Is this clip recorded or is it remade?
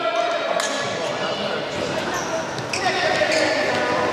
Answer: recorded